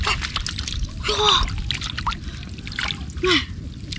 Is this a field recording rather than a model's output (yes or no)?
yes